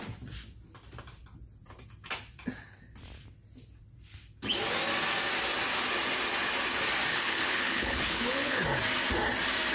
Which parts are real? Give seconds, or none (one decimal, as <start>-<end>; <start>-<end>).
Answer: 0.0-7.1; 8.6-9.7